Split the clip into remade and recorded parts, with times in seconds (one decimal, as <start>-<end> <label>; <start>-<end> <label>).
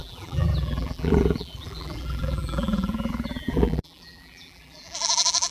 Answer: 0.0-5.5 remade